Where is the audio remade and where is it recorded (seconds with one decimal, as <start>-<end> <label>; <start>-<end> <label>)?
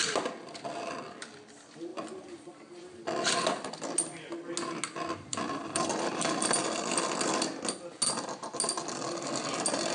0.0-0.4 recorded; 0.4-0.9 remade; 0.9-1.9 recorded; 1.9-3.0 remade; 3.0-5.3 recorded; 5.3-6.6 remade; 6.6-9.9 recorded